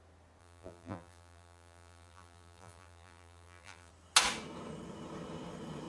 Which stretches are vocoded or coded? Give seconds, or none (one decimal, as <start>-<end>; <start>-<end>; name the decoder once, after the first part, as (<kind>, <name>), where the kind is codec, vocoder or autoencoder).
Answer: 0.4-3.9 (vocoder, BigVGAN v2)